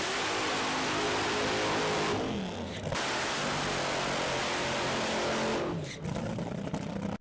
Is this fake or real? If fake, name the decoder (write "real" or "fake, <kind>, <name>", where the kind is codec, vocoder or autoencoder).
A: real